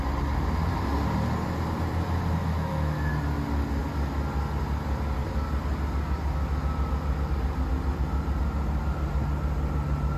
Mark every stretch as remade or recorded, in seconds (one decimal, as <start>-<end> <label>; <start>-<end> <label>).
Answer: 0.0-2.4 recorded; 2.4-3.1 remade; 3.1-10.2 recorded